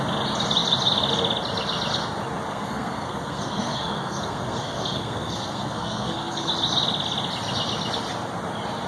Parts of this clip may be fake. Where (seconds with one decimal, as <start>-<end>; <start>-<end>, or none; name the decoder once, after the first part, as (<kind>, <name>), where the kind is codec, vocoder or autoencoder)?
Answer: 2.5-6.5 (codec, SNAC)